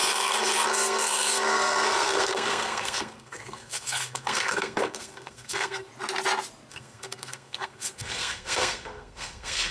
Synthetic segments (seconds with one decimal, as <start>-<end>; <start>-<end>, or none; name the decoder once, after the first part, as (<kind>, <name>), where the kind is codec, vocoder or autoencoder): 0.0-5.9 (codec, SNAC); 6.7-9.7